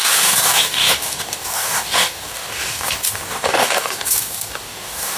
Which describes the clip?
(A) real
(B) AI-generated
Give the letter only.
B